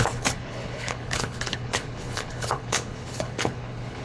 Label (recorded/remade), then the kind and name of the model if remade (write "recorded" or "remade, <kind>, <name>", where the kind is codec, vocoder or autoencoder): remade, codec, HILCodec